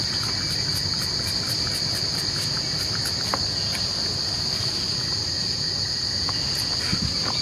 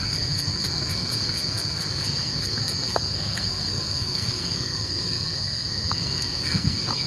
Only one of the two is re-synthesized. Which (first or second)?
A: second